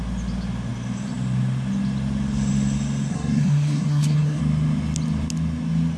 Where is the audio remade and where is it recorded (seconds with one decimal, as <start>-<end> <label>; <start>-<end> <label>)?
0.0-3.1 recorded; 3.1-4.4 remade; 4.4-6.0 recorded